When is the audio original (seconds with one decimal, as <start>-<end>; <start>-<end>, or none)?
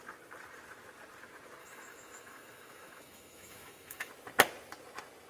0.0-1.6; 4.1-5.3